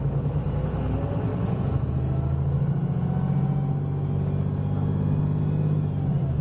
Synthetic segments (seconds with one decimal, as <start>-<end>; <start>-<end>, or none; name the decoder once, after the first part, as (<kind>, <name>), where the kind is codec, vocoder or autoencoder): 1.3-1.9 (vocoder, Vocos)